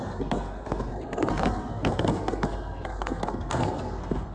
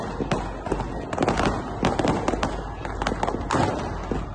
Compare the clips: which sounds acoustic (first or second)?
second